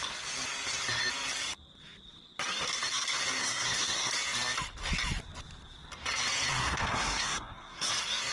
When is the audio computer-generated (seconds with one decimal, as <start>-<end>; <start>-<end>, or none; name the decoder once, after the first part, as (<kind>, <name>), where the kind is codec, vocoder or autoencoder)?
3.4-4.1 (codec, SNAC); 6.6-7.9